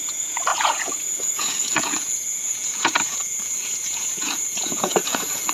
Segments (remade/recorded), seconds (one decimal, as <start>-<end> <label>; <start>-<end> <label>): 0.0-5.5 remade